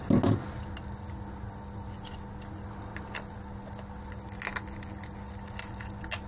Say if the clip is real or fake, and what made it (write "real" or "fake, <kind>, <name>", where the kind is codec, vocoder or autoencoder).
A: real